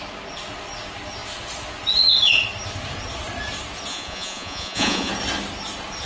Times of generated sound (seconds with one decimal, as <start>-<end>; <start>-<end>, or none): 3.9-5.1